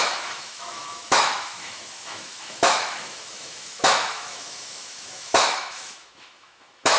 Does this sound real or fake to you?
fake